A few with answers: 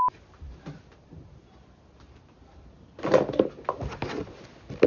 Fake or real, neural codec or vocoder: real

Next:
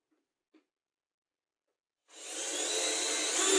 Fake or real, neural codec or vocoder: real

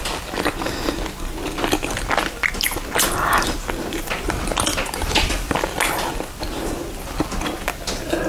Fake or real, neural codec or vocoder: real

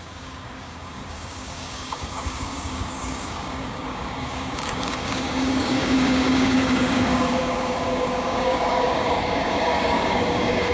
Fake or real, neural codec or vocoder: fake, codec, DAC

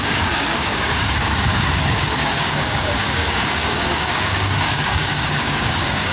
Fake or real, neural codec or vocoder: fake, codec, DAC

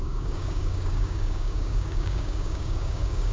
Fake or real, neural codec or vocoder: fake, codec, DAC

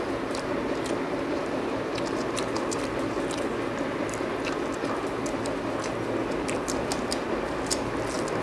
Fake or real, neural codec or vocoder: real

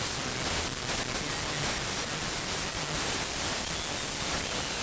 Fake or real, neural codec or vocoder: real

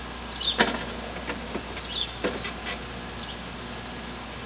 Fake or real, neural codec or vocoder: real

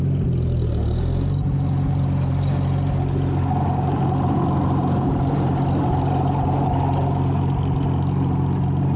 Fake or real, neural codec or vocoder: real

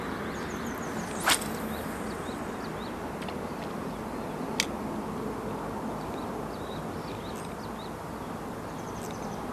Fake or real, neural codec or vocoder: real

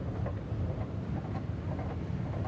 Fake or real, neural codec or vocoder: real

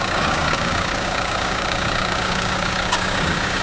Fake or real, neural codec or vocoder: fake, codec, DAC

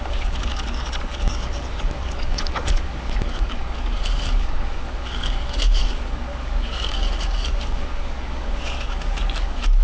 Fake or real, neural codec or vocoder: fake, codec, DAC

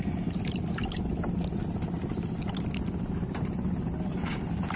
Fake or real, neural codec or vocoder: real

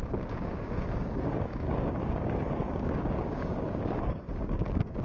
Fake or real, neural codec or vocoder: fake, codec, DAC